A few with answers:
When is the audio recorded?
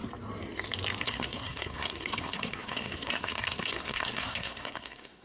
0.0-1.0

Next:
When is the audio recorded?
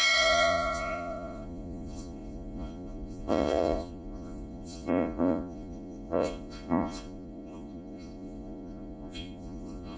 none